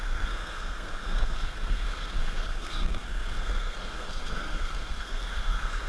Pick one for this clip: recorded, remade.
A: remade